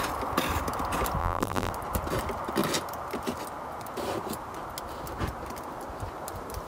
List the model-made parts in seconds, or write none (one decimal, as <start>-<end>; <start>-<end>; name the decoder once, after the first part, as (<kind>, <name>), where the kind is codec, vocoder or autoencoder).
1.2-1.7 (vocoder, BigVGAN v2)